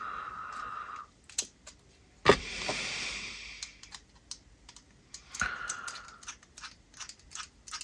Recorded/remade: recorded